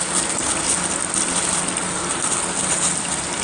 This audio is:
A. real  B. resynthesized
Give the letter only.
A